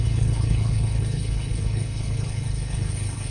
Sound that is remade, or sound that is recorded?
remade